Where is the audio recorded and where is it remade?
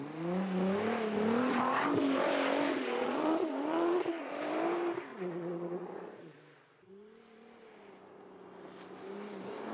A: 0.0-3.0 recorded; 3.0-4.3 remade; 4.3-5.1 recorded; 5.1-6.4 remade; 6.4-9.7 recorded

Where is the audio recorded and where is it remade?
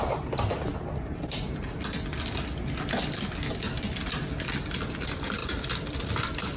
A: 0.0-6.6 recorded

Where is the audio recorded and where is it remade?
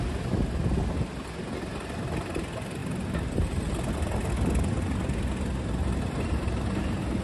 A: 0.0-7.2 recorded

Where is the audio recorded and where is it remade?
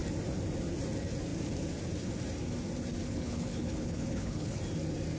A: 0.0-3.0 recorded; 3.0-4.6 remade; 4.6-5.2 recorded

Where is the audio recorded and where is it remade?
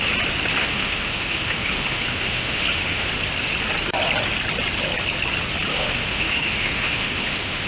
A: 0.0-0.6 recorded; 0.6-3.1 remade; 3.1-5.7 recorded; 5.7-7.7 remade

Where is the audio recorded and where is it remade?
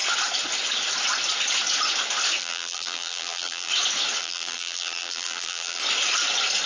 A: 0.0-2.4 recorded; 2.4-3.7 remade; 3.7-4.2 recorded; 4.2-5.8 remade; 5.8-6.7 recorded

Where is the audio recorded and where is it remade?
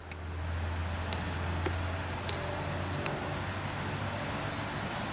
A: 0.0-5.1 recorded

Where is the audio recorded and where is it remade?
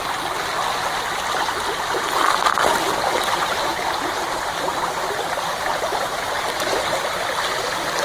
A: 0.0-3.7 recorded; 3.7-5.8 remade; 5.8-8.0 recorded